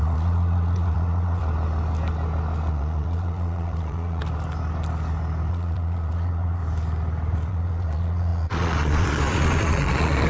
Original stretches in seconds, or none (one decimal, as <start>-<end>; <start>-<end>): 1.4-2.7; 4.2-5.5; 6.6-7.5